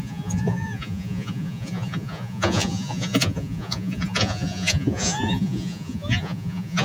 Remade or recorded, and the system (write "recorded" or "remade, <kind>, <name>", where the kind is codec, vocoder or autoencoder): remade, vocoder, Vocos